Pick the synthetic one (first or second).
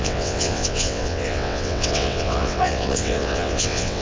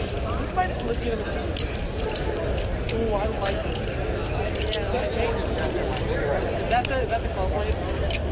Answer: first